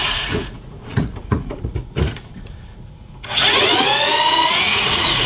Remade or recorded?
remade